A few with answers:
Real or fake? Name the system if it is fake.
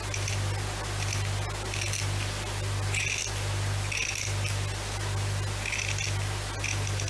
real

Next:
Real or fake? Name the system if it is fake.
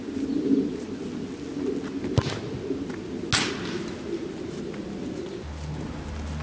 real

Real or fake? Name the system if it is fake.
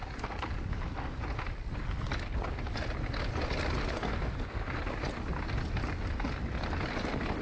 real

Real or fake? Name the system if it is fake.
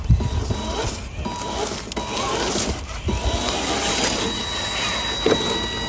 real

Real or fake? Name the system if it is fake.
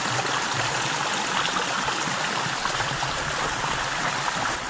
real